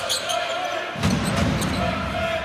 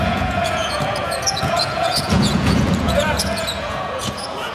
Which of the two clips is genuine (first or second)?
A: first